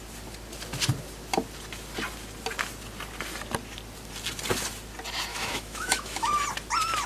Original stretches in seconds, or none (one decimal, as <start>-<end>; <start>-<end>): 0.0-5.3; 6.3-7.1